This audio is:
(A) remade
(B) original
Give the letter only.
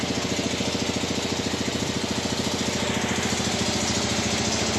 B